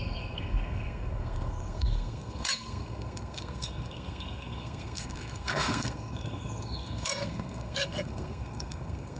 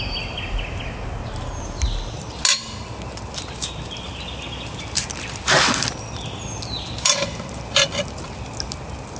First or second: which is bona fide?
second